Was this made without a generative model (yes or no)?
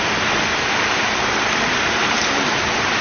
yes